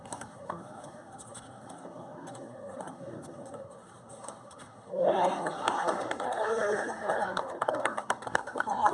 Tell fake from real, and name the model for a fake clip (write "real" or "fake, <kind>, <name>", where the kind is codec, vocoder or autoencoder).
fake, codec, SNAC